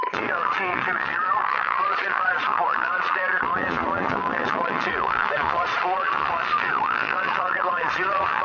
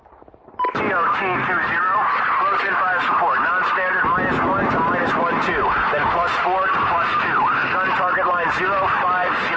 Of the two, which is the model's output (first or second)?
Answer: first